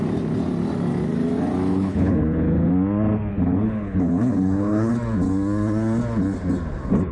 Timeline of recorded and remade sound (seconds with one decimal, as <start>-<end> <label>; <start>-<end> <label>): 0.0-1.7 recorded; 1.7-2.7 remade; 2.7-3.3 recorded; 3.3-4.9 remade; 4.9-7.1 recorded